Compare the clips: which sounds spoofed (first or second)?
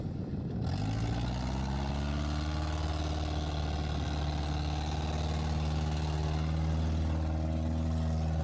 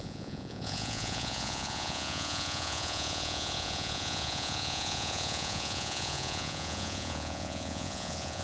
second